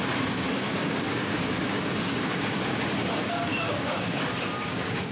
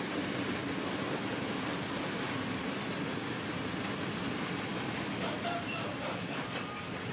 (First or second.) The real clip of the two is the second